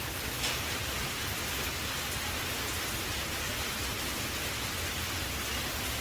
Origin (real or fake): real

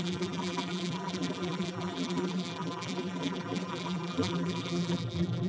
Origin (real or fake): fake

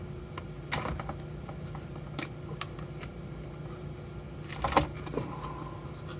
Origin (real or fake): real